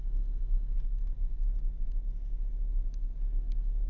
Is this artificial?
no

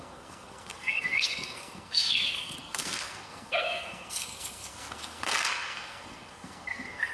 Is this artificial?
yes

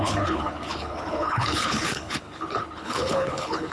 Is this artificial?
yes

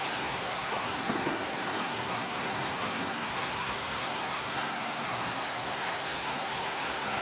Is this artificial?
yes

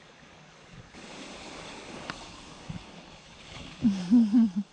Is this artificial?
yes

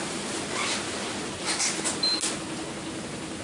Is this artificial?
no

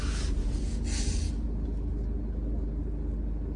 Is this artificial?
no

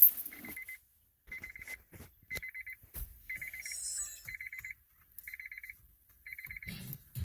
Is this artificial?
no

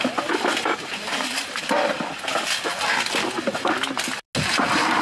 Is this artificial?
no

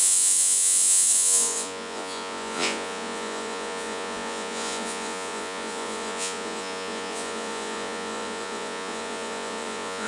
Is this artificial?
yes